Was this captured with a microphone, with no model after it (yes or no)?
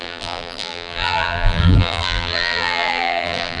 no